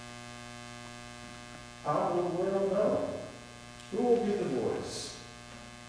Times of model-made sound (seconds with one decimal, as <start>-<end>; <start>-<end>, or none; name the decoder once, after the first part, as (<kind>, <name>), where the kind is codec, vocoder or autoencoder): none